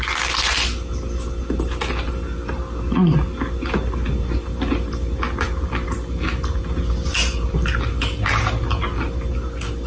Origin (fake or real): real